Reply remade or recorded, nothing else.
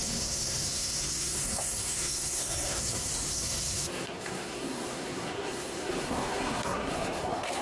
remade